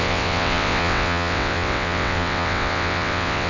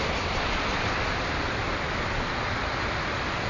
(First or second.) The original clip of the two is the second